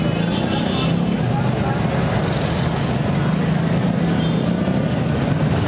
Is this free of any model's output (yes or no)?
yes